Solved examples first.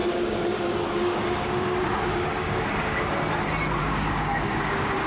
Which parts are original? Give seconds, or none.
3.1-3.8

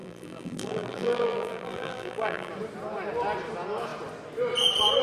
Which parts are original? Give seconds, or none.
2.5-5.0

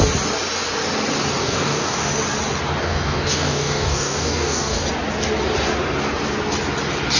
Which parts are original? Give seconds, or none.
0.0-1.4; 2.1-2.8; 4.8-7.2

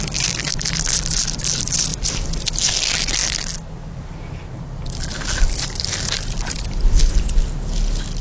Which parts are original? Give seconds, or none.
0.0-8.2